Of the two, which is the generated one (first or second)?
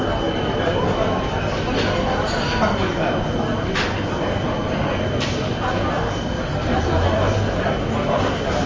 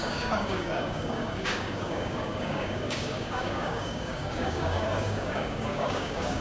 second